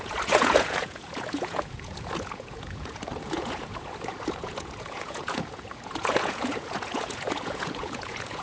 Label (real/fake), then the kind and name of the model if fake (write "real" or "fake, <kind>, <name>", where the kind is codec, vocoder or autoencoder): fake, vocoder, Vocos